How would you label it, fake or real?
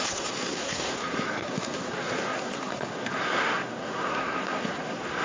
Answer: fake